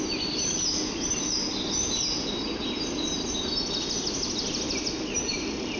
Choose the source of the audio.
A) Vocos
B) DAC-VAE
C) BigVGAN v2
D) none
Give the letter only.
D